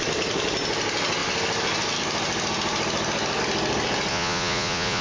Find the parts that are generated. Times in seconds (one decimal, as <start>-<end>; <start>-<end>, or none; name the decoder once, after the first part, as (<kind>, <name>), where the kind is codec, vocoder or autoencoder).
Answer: 4.1-5.0 (vocoder, Vocos)